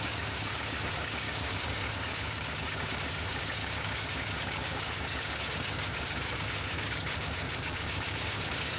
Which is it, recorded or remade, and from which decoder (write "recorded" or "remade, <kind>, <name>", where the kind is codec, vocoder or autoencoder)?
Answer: remade, codec, DAC